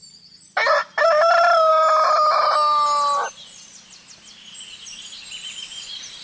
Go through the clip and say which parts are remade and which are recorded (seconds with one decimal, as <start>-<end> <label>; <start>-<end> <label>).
0.0-6.2 recorded